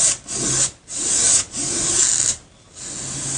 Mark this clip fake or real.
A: real